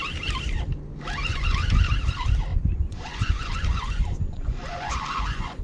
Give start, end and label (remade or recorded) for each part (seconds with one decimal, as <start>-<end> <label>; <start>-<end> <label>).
0.0-1.3 recorded; 1.3-1.9 remade; 1.9-2.5 recorded; 2.5-5.6 remade